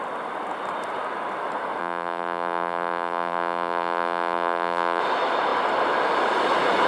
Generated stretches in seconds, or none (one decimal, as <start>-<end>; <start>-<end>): 1.8-5.0

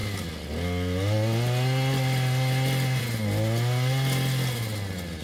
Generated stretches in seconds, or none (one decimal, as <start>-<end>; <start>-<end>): none

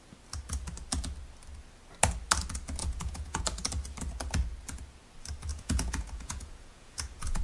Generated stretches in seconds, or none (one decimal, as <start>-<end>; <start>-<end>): 2.8-3.4; 5.5-7.4

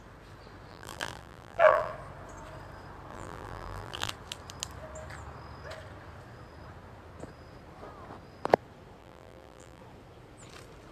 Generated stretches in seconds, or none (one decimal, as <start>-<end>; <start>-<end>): 0.7-1.9; 3.1-4.1; 9.0-9.8

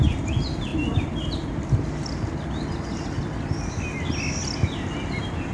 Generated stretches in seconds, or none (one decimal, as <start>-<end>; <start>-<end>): none

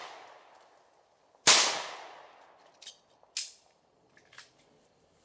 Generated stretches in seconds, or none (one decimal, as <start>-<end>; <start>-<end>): none

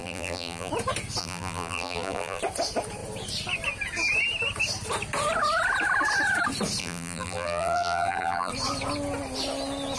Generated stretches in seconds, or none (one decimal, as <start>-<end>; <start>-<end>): 0.0-0.7; 1.2-2.4; 6.8-8.5

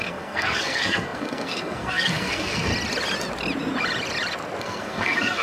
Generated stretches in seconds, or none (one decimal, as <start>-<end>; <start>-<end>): 0.0-2.7; 4.6-5.4